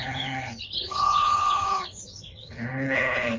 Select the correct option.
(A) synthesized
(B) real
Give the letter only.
A